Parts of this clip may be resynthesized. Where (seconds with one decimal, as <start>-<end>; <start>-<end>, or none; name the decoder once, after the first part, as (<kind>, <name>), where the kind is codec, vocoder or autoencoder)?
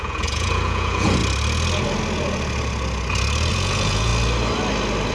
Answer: 0.0-1.2 (vocoder, Vocos); 3.5-4.1